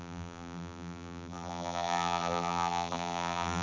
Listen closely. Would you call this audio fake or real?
fake